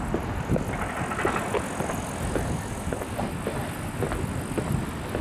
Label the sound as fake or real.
real